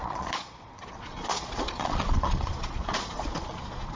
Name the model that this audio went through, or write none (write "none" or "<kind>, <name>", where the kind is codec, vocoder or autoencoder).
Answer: vocoder, Vocos